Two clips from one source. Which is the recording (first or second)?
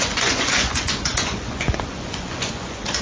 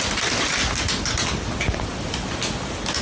second